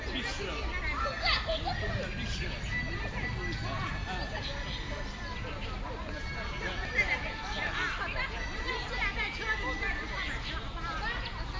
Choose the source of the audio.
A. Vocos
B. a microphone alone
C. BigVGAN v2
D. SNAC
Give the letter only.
B